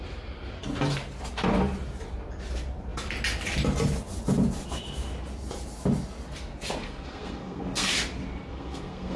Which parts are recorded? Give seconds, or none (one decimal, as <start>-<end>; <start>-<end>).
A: 0.0-6.8; 7.9-8.5